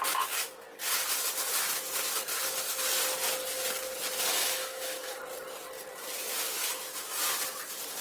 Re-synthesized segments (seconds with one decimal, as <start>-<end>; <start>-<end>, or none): 4.3-5.2